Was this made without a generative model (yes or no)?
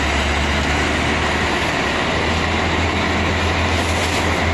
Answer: yes